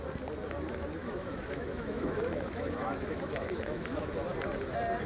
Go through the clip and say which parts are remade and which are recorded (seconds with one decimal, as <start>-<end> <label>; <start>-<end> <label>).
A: 0.0-1.0 recorded; 1.0-4.1 remade; 4.1-5.1 recorded